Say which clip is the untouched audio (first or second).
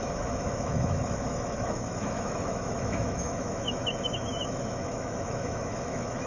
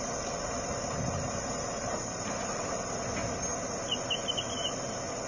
second